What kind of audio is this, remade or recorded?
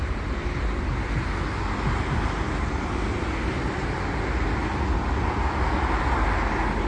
recorded